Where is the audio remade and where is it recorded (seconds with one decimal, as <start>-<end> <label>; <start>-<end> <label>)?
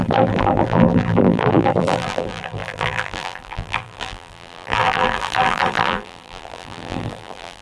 0.0-7.6 remade